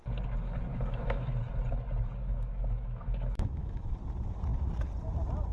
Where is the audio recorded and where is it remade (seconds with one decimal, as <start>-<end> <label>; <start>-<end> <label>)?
0.0-0.7 recorded; 0.7-1.4 remade; 1.4-2.2 recorded; 2.2-4.0 remade; 4.0-5.5 recorded